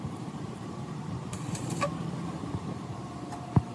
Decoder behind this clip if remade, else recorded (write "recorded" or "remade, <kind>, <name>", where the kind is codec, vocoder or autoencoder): remade, vocoder, BigVGAN v2